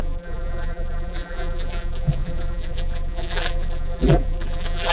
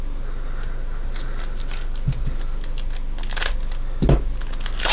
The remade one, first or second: first